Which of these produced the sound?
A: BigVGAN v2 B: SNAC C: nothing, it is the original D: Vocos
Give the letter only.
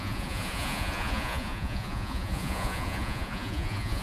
D